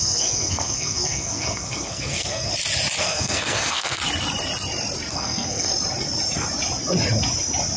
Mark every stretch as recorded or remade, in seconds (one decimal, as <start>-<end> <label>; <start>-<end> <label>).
0.0-2.5 remade; 2.5-3.0 recorded; 3.0-4.0 remade; 4.0-5.1 recorded; 5.1-5.7 remade; 5.7-7.8 recorded